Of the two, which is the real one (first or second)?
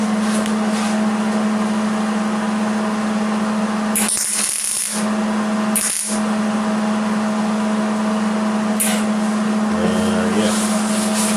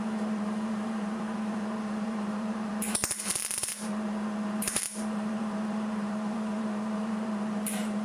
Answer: first